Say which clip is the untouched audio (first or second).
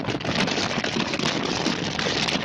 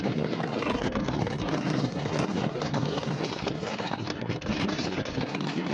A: first